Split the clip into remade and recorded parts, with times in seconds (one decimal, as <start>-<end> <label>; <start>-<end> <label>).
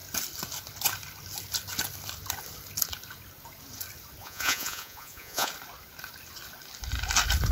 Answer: 0.0-4.2 recorded; 4.2-5.5 remade; 5.5-7.5 recorded